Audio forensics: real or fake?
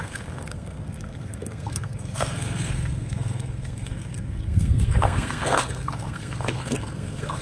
fake